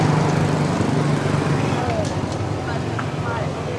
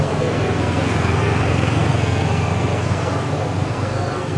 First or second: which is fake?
second